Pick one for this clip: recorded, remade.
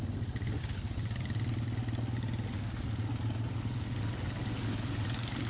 recorded